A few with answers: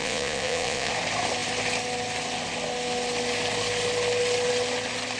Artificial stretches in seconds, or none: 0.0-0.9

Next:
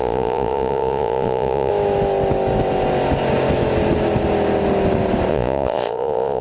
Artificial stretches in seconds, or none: 0.0-1.7; 5.3-6.4

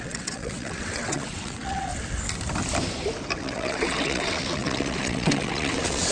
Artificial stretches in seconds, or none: 0.0-1.9; 3.4-6.1

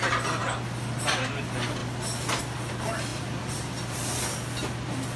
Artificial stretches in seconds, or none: 3.1-4.2

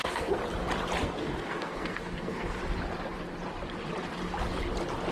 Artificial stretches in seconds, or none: 0.0-0.4; 1.0-2.6

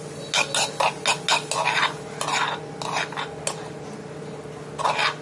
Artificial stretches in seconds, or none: none